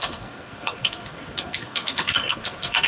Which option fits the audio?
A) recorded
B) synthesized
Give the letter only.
B